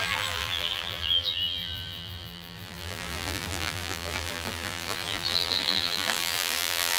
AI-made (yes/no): yes